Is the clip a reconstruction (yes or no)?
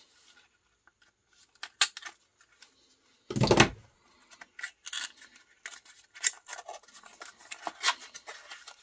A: no